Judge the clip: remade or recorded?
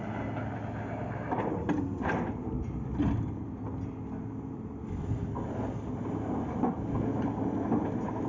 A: recorded